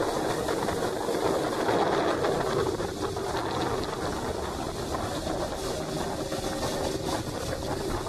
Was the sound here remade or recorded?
recorded